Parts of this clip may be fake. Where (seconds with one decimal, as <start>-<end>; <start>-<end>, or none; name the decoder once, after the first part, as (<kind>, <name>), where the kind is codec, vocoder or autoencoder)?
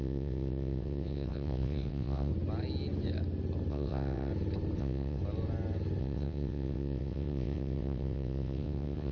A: 0.0-2.3 (vocoder, WaveNeXt); 3.7-4.3; 4.8-5.2; 6.0-9.1